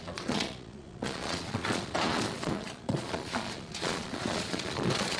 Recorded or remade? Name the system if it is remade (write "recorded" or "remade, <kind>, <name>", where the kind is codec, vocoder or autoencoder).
remade, vocoder, Vocos